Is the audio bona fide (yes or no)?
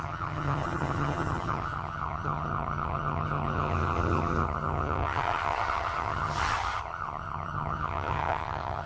no